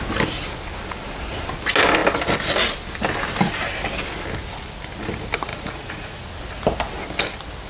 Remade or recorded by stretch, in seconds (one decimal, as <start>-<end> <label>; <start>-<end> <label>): 0.0-5.5 recorded; 5.5-6.2 remade; 6.2-7.7 recorded